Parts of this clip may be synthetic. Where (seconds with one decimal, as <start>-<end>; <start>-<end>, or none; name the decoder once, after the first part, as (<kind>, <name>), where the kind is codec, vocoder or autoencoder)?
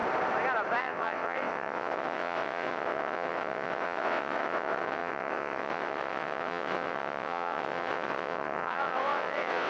0.8-9.7 (vocoder, WaveNeXt)